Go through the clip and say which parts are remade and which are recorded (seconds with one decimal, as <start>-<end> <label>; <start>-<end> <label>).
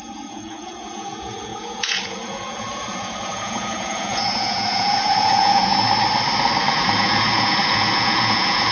0.0-5.7 remade; 5.7-6.7 recorded; 6.7-8.7 remade